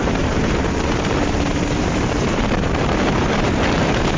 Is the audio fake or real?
fake